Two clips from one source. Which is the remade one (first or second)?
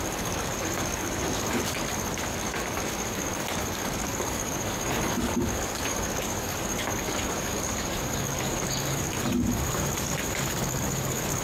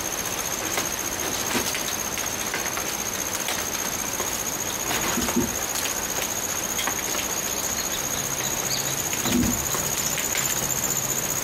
first